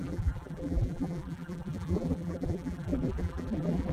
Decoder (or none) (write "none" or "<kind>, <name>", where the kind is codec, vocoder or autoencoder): vocoder, BigVGAN v2